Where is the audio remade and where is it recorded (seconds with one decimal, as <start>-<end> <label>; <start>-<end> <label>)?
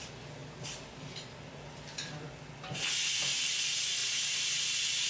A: 0.0-5.1 recorded